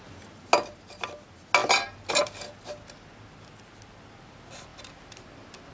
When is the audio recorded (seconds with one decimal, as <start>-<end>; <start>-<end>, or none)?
0.0-5.7